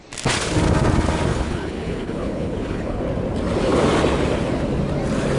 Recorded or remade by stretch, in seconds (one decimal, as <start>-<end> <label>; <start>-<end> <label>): 0.0-1.3 recorded; 1.3-3.0 remade; 3.0-5.4 recorded